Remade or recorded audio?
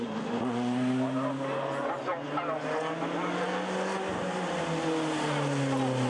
recorded